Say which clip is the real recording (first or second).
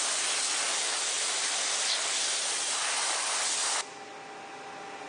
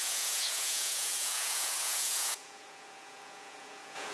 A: first